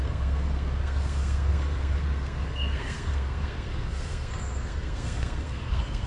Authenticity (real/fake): fake